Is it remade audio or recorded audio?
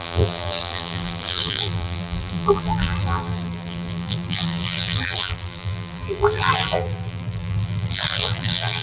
remade